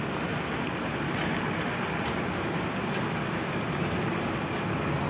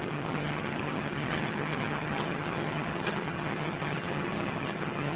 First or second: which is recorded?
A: first